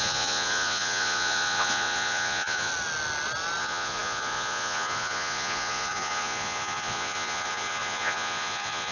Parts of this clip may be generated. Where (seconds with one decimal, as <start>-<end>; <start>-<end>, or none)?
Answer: 0.0-2.7; 3.6-8.9